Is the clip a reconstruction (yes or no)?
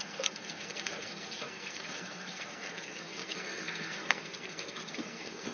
yes